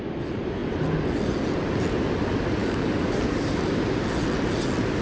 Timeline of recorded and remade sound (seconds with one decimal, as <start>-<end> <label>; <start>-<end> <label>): 0.0-2.6 recorded; 2.6-3.6 remade; 3.6-5.0 recorded